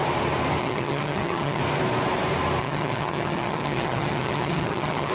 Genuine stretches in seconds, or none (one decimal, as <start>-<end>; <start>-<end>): 0.0-0.6; 1.6-2.6